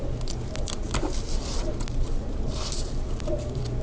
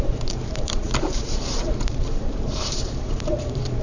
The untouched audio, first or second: first